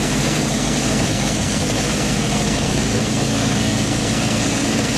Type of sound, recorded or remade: remade